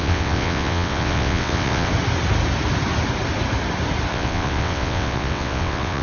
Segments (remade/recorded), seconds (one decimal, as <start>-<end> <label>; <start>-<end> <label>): 0.0-1.9 remade; 1.9-4.1 recorded; 4.1-6.0 remade

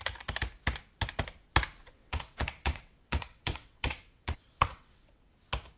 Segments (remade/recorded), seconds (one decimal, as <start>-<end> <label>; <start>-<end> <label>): 0.0-1.8 recorded; 1.8-5.3 remade; 5.3-5.8 recorded

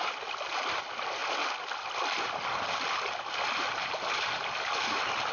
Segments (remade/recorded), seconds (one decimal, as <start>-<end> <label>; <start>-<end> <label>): 0.0-5.3 recorded

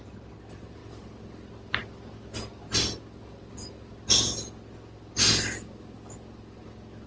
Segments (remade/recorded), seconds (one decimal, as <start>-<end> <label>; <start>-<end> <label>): 0.0-7.1 recorded

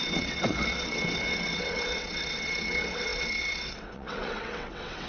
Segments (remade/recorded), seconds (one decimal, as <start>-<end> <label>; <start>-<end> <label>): 0.0-5.1 remade

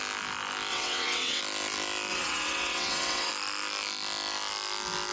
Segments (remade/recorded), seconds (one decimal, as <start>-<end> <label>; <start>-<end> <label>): 0.0-0.7 recorded; 0.7-1.4 remade; 1.4-2.1 recorded; 2.1-3.3 remade; 3.3-5.1 recorded